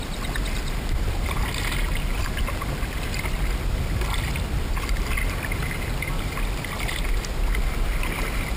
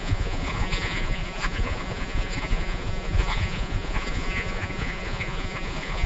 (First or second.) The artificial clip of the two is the second